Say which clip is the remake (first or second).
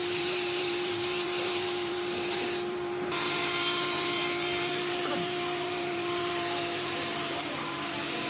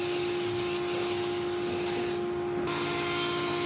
first